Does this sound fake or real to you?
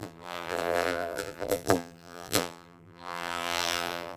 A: fake